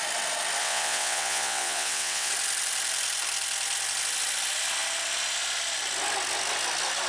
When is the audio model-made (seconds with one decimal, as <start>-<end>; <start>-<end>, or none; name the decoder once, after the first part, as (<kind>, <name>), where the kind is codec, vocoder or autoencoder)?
0.6-2.3 (vocoder, WaveNeXt)